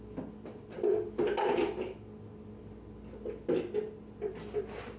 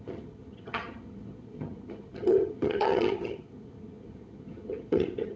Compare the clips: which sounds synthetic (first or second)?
second